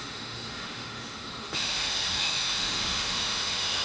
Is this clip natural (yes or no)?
no